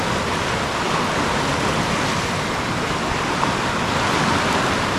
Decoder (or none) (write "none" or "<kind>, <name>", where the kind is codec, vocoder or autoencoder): none